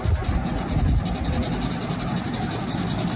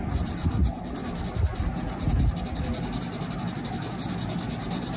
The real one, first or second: second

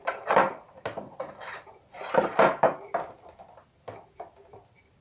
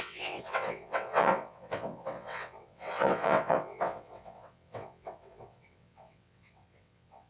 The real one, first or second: first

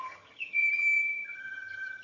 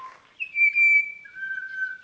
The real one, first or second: second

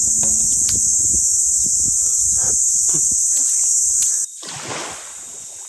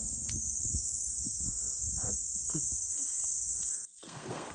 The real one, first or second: first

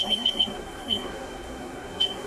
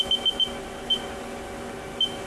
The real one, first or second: second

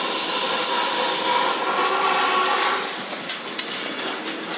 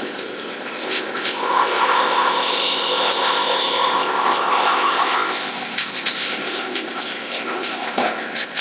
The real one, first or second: first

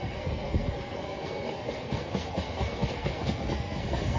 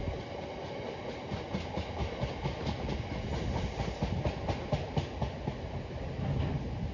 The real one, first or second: second